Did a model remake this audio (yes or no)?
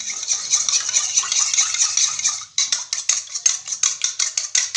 no